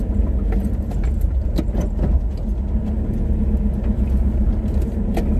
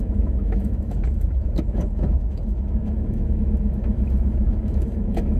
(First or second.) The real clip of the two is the first